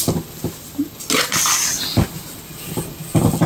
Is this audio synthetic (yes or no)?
no